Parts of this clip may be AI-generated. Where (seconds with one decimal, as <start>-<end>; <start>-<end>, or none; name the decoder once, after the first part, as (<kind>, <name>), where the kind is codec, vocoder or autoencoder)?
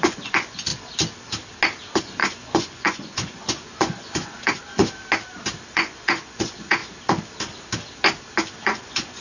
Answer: 0.0-0.7 (vocoder, Vocos); 2.0-4.8; 5.7-6.8; 8.6-9.2